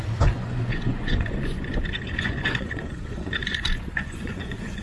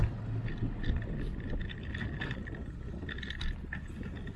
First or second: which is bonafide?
second